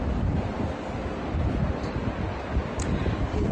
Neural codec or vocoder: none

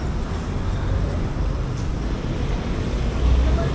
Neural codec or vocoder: none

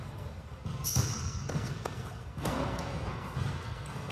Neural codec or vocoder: codec, SNAC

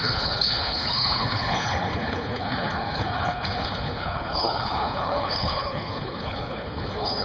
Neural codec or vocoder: codec, HILCodec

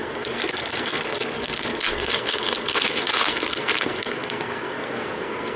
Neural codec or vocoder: codec, SNAC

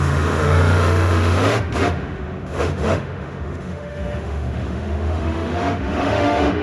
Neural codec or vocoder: autoencoder, DAC-VAE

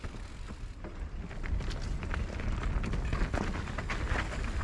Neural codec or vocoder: none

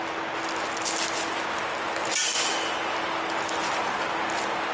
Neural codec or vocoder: none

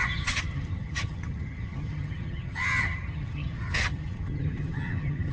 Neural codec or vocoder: vocoder, HiFi-GAN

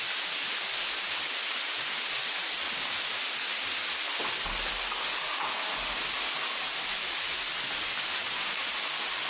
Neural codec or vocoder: none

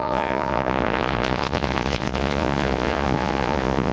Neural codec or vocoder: vocoder, Vocos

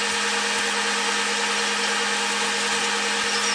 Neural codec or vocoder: none